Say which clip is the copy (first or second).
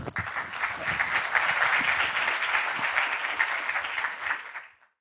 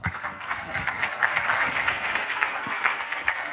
second